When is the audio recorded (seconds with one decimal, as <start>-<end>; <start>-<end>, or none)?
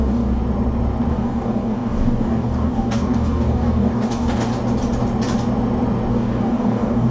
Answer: 0.4-1.1; 4.5-6.1